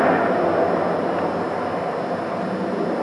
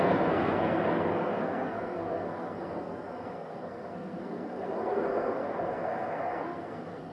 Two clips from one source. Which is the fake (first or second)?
second